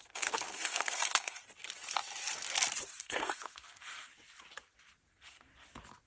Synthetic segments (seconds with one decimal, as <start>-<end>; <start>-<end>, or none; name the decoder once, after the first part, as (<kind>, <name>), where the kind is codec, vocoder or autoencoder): 0.0-1.4 (codec, SNAC); 3.0-4.1; 5.1-5.5